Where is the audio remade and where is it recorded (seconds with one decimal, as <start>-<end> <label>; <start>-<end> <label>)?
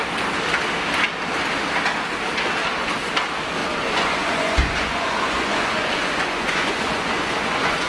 0.0-3.6 recorded; 3.6-7.9 remade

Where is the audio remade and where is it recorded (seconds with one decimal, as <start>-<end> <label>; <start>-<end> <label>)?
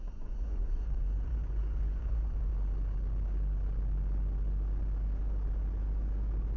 0.0-2.5 remade; 2.5-6.6 recorded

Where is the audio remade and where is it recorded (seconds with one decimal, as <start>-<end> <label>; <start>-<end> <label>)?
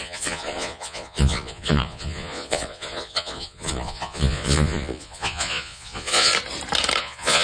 0.0-6.3 remade; 6.3-7.0 recorded; 7.0-7.4 remade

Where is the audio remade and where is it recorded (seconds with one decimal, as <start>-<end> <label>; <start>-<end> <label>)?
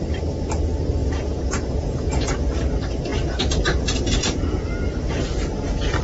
0.0-1.0 recorded; 1.0-2.6 remade; 2.6-3.1 recorded; 3.1-4.4 remade; 4.4-6.0 recorded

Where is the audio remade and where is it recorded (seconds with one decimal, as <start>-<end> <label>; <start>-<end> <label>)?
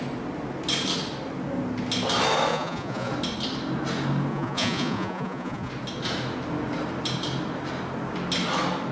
0.0-2.5 recorded; 2.5-3.1 remade; 3.1-4.3 recorded; 4.3-5.7 remade; 5.7-8.9 recorded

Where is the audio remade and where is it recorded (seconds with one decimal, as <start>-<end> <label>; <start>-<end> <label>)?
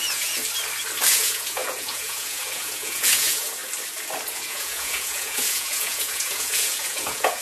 0.0-0.4 remade; 0.4-1.1 recorded; 1.1-3.6 remade; 3.6-4.3 recorded; 4.3-7.4 remade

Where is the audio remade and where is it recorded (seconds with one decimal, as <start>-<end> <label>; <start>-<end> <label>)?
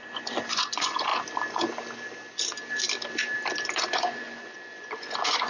0.0-1.1 remade; 1.1-3.8 recorded; 3.8-5.5 remade